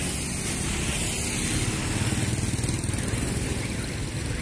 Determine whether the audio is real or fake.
real